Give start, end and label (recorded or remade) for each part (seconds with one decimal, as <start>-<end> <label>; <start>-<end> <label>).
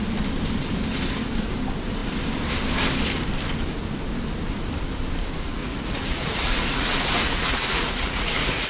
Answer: 0.0-5.6 recorded; 5.6-8.7 remade